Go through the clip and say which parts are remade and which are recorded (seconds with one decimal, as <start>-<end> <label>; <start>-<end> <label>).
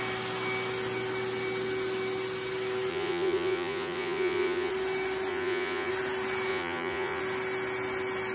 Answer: 0.0-2.9 recorded; 2.9-4.7 remade; 4.7-5.3 recorded; 5.3-5.9 remade; 5.9-6.5 recorded; 6.5-7.2 remade; 7.2-8.3 recorded